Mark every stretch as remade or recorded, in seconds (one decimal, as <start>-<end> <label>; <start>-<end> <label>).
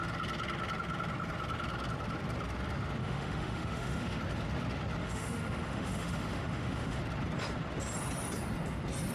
0.0-3.0 recorded; 3.0-4.2 remade; 4.2-5.0 recorded; 5.0-7.0 remade; 7.0-9.1 recorded